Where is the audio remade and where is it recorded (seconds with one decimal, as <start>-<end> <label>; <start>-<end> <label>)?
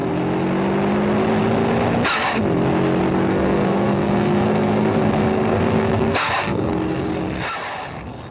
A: 0.0-3.3 recorded; 3.3-7.1 remade; 7.1-8.3 recorded